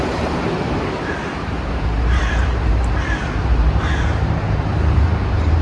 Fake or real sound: fake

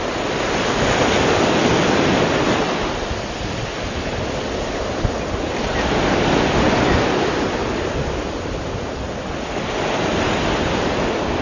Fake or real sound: real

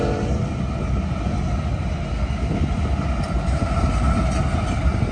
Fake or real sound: real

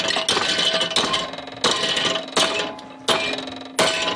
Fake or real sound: real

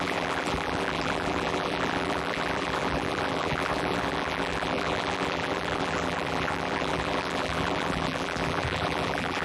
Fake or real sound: fake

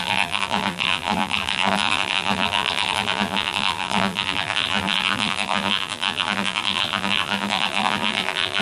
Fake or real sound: fake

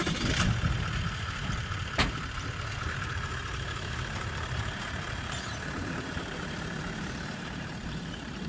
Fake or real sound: fake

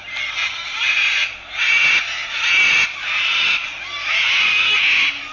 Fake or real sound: real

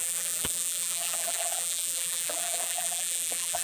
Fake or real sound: fake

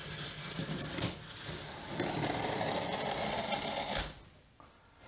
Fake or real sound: fake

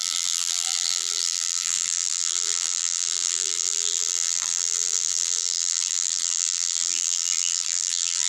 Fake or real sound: fake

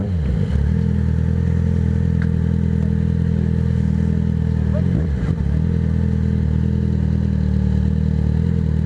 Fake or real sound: real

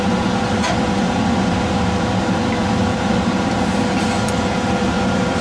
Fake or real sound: real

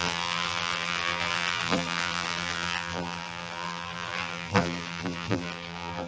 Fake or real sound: fake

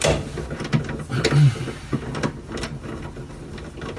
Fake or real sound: real